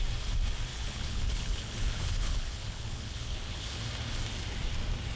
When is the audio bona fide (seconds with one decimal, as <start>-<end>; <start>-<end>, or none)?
0.0-0.7; 3.8-5.2